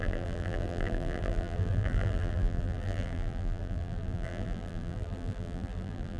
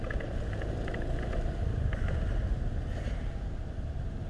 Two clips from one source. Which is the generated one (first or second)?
first